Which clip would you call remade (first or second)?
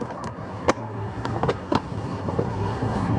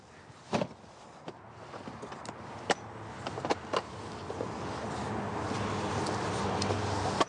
first